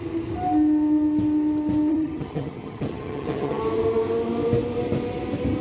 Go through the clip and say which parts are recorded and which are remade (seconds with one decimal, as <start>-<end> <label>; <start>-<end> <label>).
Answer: 0.0-1.9 recorded; 1.9-3.6 remade; 3.6-5.6 recorded